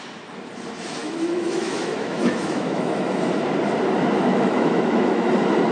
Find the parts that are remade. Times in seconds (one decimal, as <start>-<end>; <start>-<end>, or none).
1.0-3.2; 4.3-5.3